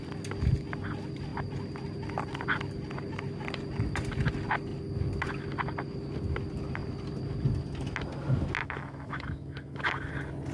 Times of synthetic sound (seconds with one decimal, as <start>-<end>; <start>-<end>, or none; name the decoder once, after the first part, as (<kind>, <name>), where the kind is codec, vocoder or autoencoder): 8.6-10.1 (autoencoder, DAC-VAE)